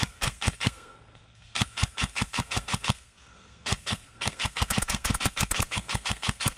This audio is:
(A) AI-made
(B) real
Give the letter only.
A